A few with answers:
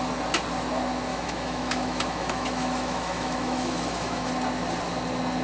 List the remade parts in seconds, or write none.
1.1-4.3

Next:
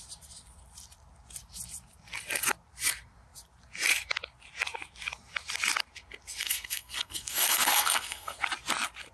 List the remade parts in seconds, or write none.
6.4-8.4

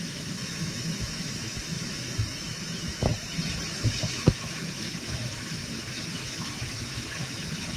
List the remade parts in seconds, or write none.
0.0-3.1; 3.7-7.8

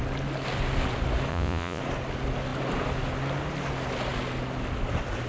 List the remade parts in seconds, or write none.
1.3-1.8

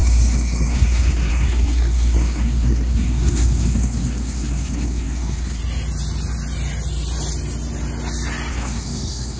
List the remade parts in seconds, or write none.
0.0-5.6; 8.5-9.4